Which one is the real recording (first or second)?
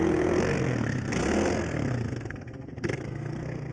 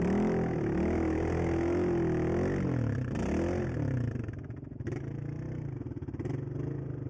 second